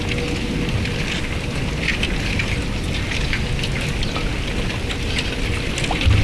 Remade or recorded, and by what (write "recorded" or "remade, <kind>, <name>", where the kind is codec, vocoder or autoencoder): recorded